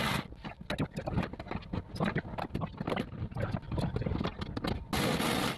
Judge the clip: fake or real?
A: real